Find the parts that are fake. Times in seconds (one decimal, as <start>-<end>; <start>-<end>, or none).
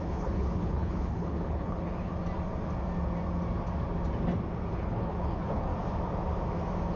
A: 0.0-2.1; 4.7-5.7